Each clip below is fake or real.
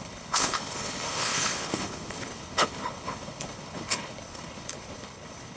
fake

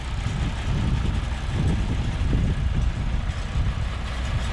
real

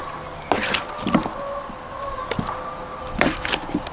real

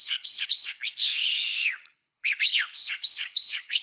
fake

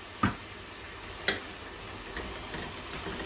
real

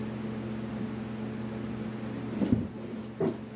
real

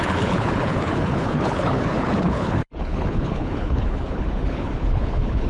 fake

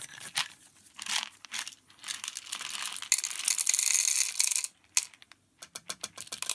real